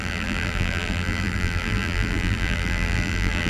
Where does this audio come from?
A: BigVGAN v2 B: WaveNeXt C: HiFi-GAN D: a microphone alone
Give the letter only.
A